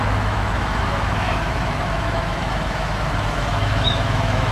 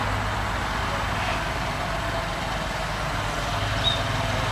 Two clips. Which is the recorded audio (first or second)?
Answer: second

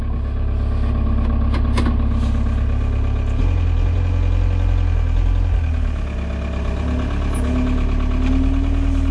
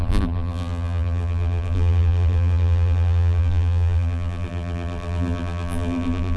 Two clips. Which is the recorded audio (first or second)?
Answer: first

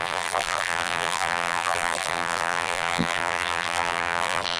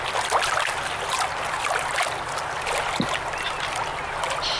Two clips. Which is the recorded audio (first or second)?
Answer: second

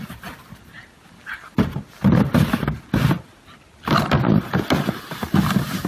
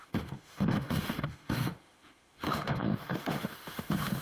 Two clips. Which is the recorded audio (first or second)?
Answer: first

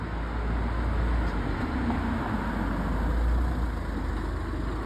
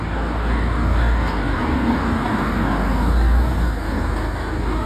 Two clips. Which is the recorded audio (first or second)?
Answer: first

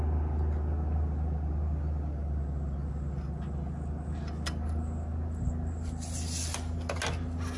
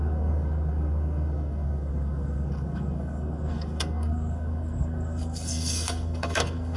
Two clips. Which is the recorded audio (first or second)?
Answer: first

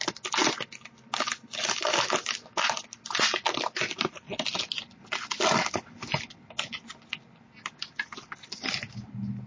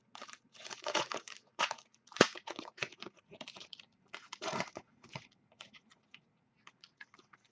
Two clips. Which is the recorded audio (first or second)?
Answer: first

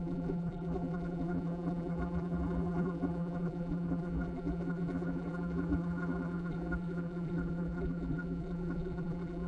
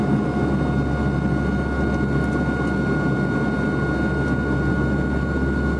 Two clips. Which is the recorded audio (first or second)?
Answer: second